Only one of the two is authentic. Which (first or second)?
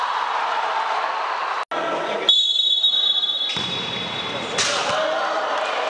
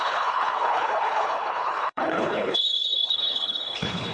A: first